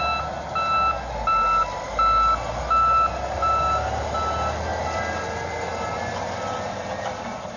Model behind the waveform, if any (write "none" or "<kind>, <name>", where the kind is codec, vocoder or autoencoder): none